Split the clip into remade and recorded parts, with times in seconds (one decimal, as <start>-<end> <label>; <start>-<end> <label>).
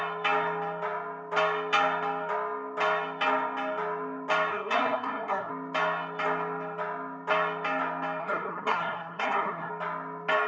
0.0-4.5 recorded; 4.5-5.5 remade; 5.5-8.2 recorded; 8.2-9.7 remade; 9.7-10.5 recorded